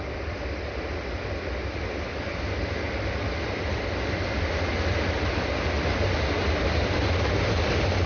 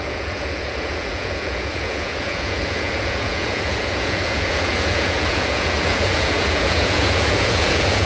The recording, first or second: first